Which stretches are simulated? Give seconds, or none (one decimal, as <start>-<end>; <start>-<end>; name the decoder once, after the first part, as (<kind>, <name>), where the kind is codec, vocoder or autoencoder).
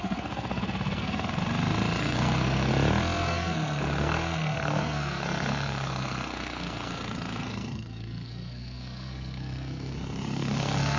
0.0-1.4 (codec, SNAC); 2.0-2.7; 3.2-11.0